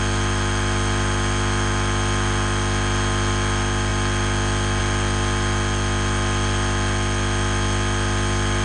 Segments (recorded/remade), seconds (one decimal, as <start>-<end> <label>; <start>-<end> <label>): 0.0-8.6 recorded